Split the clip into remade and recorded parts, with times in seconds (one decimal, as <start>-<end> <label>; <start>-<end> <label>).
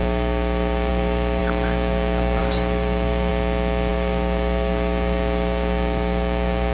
0.0-3.3 remade; 3.3-3.9 recorded; 3.9-6.7 remade